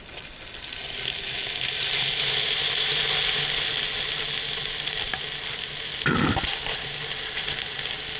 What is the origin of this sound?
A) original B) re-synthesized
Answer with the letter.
A